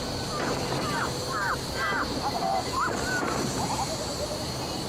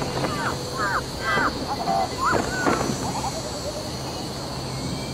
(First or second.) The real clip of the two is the second